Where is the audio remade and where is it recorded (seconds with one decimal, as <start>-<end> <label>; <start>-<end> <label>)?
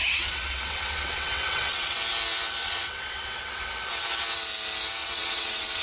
0.0-2.0 remade; 2.0-2.6 recorded; 2.6-3.7 remade; 3.7-5.0 recorded; 5.0-5.8 remade